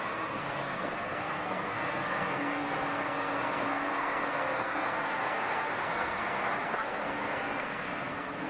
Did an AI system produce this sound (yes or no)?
yes